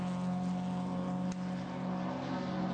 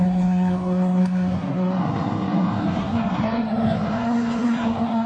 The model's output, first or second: second